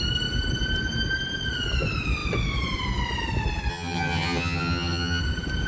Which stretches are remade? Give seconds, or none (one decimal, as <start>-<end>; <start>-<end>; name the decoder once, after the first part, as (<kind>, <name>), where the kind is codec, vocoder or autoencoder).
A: 3.7-5.2 (vocoder, HiFi-GAN)